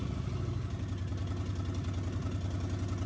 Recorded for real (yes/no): yes